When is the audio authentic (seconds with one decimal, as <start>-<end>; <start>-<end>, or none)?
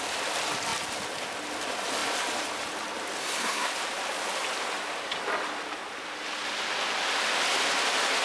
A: 0.0-3.2; 3.7-8.2